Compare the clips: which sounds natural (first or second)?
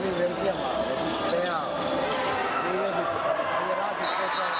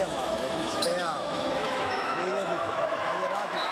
first